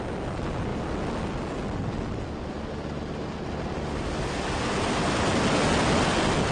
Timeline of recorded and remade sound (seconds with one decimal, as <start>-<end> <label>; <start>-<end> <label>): 0.0-6.5 recorded